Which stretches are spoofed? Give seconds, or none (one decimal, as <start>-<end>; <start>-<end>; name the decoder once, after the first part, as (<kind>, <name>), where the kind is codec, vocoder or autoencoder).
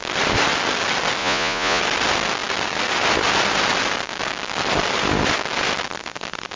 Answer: 1.2-1.8 (vocoder, Vocos)